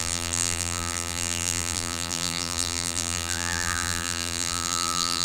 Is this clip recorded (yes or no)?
no